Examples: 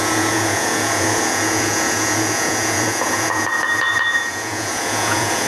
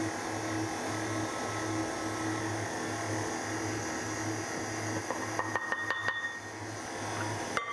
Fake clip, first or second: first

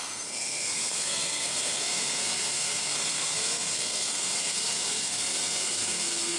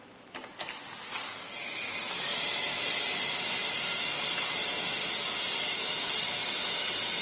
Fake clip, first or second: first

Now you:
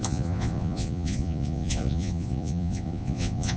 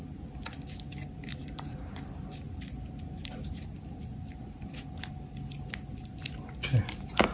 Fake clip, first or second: first